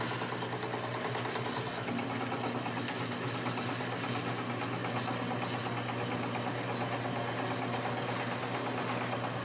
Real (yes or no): yes